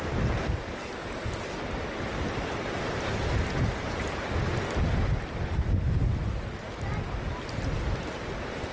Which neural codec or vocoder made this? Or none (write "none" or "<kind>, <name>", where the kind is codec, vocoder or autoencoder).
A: none